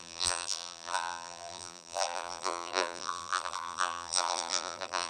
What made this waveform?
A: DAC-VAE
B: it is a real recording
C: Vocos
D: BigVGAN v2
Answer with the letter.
D